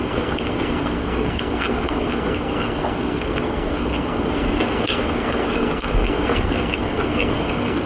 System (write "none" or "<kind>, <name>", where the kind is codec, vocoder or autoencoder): codec, SNAC